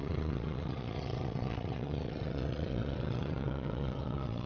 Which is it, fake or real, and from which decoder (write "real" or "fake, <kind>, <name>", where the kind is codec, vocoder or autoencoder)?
fake, vocoder, WaveNeXt